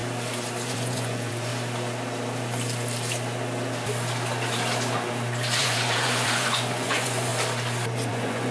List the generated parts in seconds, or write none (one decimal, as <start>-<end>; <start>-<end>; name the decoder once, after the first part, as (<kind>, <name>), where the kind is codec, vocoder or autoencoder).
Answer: 0.7-1.5 (vocoder, Vocos); 5.6-7.3; 8.1-8.5